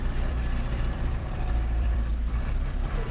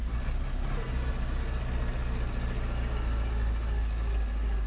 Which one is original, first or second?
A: second